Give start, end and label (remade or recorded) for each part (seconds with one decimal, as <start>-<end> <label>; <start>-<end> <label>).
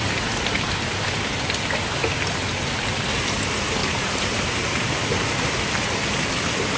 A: 0.0-3.8 recorded; 3.8-5.5 remade; 5.5-6.8 recorded